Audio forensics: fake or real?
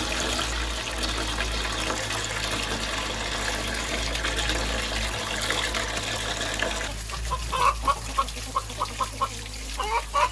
real